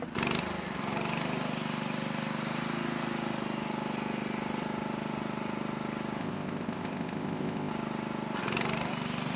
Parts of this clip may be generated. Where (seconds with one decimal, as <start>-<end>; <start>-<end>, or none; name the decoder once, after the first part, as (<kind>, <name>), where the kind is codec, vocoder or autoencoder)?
6.2-7.7 (codec, ZipCodec)